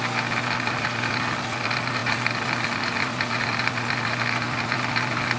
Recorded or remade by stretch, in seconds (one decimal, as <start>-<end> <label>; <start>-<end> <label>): 0.0-5.4 recorded